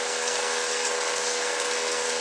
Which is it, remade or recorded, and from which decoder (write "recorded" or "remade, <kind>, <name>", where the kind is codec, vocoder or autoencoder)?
remade, codec, SNAC